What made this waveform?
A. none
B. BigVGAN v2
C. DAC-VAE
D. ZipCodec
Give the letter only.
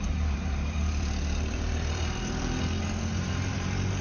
B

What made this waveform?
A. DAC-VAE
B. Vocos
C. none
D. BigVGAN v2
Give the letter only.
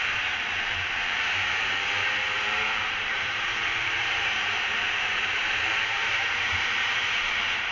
D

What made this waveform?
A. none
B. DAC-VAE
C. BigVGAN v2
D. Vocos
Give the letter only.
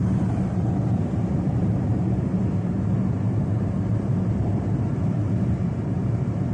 C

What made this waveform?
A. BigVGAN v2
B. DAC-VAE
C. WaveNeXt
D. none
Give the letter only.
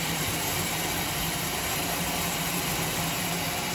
A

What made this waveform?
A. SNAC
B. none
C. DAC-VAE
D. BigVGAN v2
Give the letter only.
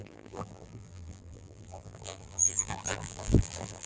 D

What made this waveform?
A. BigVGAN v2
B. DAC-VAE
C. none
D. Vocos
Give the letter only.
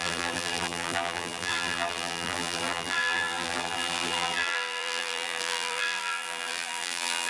A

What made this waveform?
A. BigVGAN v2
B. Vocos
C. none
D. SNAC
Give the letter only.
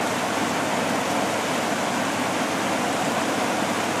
C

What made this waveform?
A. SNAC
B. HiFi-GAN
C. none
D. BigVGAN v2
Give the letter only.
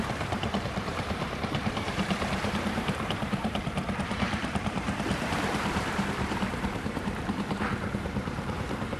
D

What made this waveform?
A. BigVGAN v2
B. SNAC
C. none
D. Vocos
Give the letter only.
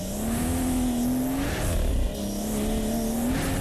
C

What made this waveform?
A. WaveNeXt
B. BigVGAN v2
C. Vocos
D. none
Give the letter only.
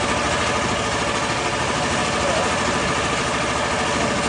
D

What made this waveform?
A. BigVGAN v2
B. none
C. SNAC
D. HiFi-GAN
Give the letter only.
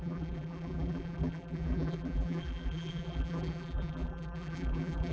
A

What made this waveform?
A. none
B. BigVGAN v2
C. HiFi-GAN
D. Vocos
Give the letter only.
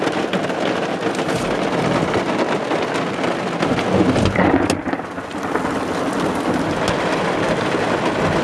A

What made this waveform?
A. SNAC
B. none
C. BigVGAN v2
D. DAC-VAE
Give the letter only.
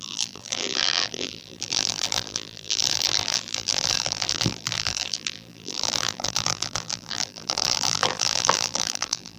C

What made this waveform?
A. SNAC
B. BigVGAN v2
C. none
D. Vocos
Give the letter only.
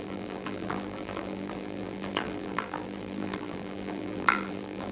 B